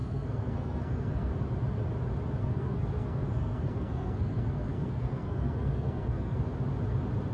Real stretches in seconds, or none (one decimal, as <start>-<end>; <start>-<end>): 1.3-2.4; 6.4-7.3